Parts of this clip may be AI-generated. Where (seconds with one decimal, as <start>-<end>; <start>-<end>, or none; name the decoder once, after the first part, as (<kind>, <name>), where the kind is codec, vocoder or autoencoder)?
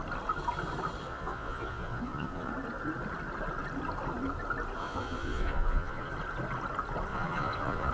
1.0-2.5 (vocoder, Vocos); 4.8-6.1; 7.1-7.9